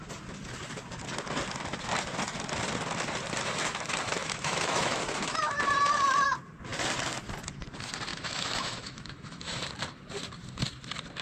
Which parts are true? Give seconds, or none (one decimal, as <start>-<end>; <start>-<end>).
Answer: 0.0-4.2; 5.0-8.1; 9.6-11.2